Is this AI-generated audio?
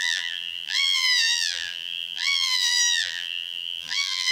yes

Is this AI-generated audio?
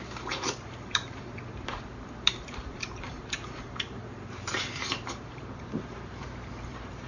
yes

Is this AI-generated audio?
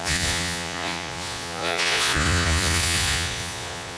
yes